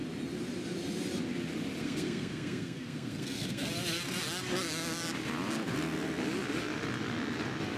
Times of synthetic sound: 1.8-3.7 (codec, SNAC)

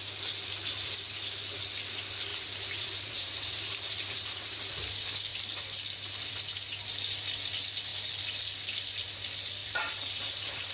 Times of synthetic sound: 2.3-4.6 (vocoder, BigVGAN v2); 9.6-10.7

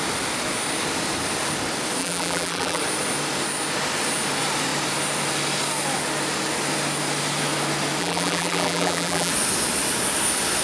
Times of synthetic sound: 2.0-2.8 (vocoder, BigVGAN v2); 8.0-9.3

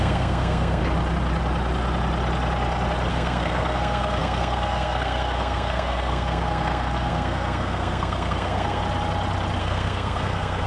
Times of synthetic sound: 0.0-0.8 (codec, SNAC); 3.1-8.8; 9.6-10.7

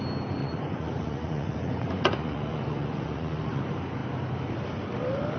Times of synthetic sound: 0.4-3.6 (vocoder, Vocos)

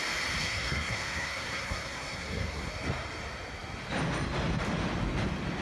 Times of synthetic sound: 0.4-2.7 (codec, SNAC)